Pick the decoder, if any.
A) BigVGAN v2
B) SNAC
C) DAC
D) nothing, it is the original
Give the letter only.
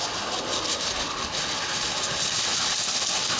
D